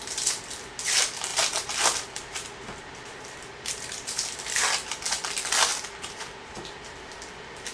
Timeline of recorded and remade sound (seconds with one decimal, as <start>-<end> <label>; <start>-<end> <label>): 0.0-5.7 remade; 5.7-7.0 recorded; 7.0-7.7 remade